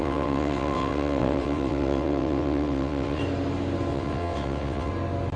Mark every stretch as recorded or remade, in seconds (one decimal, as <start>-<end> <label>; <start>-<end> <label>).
0.0-3.2 remade; 3.2-3.9 recorded; 3.9-4.9 remade; 4.9-5.4 recorded